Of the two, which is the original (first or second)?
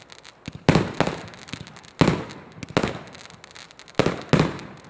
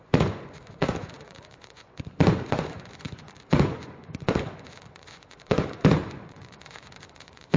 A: first